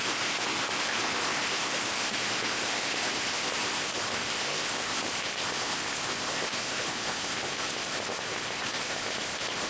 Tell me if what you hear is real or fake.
fake